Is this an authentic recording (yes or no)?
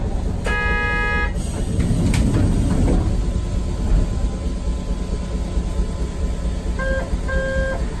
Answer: yes